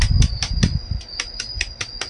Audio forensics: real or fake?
real